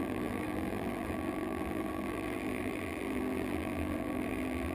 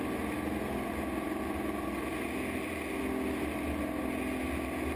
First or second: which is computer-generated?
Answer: first